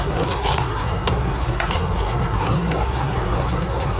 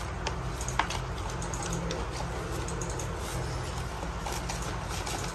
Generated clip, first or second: first